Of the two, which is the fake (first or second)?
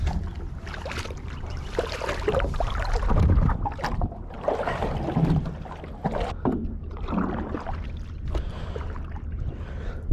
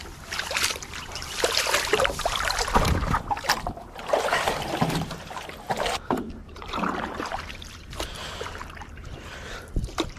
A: second